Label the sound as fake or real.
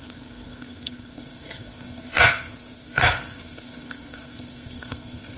fake